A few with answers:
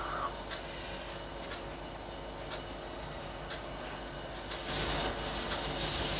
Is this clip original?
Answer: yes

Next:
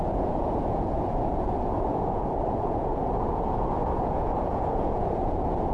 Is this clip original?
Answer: no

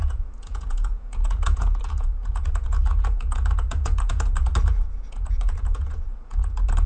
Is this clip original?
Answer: no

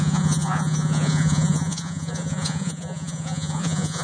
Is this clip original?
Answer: no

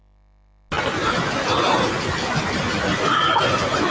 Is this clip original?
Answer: yes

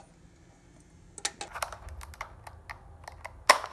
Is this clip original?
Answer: yes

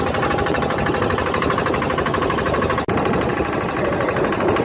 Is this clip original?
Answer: yes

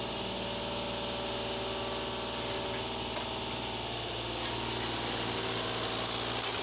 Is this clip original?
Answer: yes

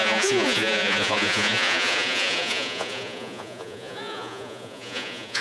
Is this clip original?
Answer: no